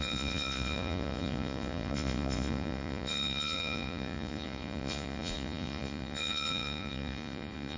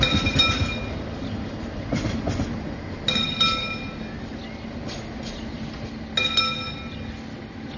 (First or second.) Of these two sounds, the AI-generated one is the first